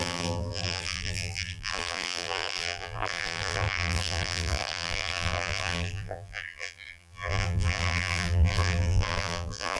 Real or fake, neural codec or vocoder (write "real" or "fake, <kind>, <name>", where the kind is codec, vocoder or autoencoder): fake, vocoder, BigVGAN v2